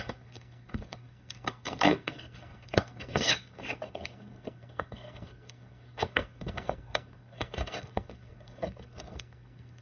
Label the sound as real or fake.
fake